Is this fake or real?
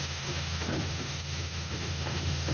fake